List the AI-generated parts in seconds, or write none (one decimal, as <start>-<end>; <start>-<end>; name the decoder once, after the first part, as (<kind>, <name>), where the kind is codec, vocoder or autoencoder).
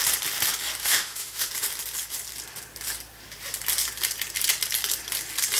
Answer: 0.8-1.5 (autoencoder, DAC-VAE)